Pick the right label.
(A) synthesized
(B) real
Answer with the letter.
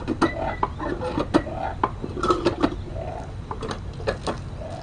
B